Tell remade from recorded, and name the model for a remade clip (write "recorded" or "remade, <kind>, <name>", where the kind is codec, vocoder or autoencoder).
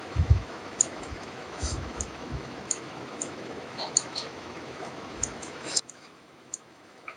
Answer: remade, autoencoder, DAC-VAE